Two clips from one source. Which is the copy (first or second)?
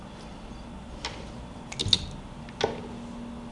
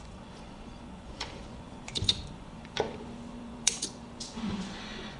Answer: second